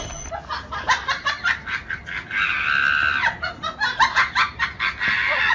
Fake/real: real